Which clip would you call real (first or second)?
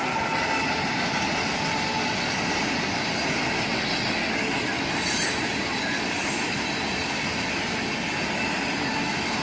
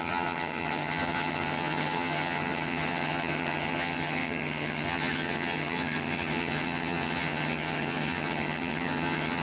first